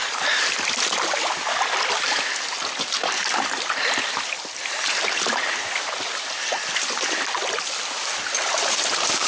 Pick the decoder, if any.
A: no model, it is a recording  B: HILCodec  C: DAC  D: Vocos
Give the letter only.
A